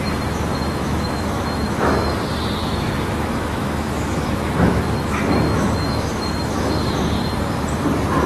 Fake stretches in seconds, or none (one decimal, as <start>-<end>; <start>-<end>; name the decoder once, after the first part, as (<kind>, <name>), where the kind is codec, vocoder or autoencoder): 0.5-2.1 (autoencoder, DAC-VAE); 2.6-7.0